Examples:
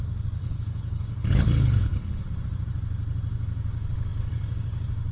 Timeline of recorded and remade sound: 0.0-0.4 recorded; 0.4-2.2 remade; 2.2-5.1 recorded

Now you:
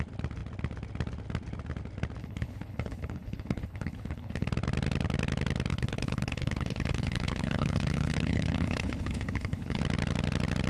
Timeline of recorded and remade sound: 0.0-2.2 recorded; 2.2-4.5 remade; 4.5-5.7 recorded; 5.7-9.8 remade; 9.8-10.7 recorded

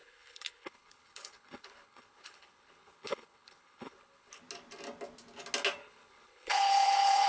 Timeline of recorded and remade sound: 0.0-4.4 remade; 4.4-5.8 recorded; 5.8-7.3 remade

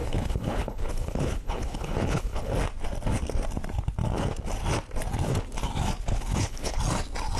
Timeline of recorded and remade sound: 0.0-2.5 remade; 2.5-6.1 recorded; 6.1-6.8 remade; 6.8-7.4 recorded